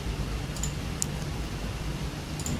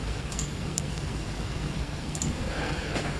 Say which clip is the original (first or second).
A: first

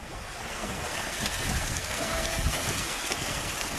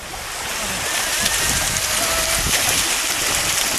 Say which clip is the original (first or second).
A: second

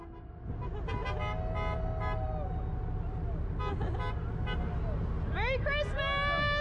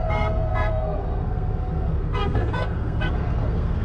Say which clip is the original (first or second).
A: first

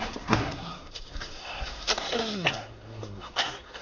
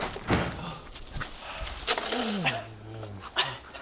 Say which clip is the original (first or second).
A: second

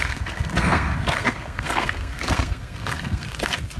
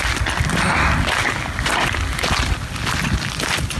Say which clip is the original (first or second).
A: second